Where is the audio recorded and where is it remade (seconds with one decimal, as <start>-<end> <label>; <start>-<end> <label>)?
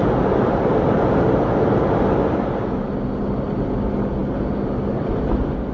0.0-5.7 recorded